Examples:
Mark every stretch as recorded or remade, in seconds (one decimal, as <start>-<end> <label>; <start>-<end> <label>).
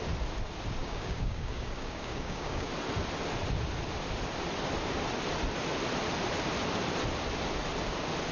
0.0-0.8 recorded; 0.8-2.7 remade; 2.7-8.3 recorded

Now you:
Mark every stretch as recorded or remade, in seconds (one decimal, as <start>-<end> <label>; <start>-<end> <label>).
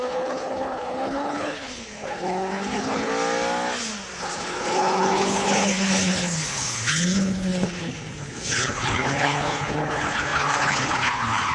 0.0-3.1 remade; 3.1-4.2 recorded; 4.2-11.5 remade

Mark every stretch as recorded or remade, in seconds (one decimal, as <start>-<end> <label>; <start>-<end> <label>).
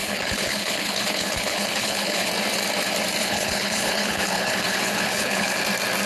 0.0-2.3 remade; 2.3-3.2 recorded; 3.2-5.6 remade; 5.6-6.1 recorded